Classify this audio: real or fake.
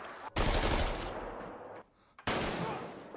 real